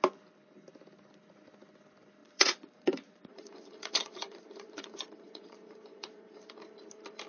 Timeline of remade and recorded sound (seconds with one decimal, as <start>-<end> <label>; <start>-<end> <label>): 0.0-2.2 recorded; 2.2-6.6 remade; 6.6-7.3 recorded